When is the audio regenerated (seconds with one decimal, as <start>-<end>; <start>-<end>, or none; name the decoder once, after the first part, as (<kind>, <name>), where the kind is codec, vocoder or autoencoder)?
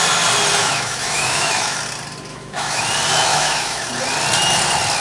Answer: 0.6-1.8 (autoencoder, DAC-VAE); 2.3-2.8; 3.3-3.9